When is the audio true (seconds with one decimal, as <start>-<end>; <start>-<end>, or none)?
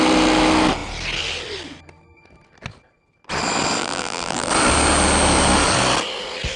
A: 0.0-3.8; 4.5-6.6